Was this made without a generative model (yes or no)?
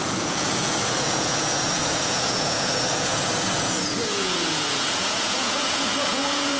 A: no